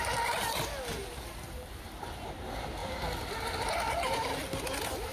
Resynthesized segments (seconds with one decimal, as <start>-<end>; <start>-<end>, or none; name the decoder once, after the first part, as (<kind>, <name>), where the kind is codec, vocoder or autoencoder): 0.9-1.9 (vocoder, BigVGAN v2)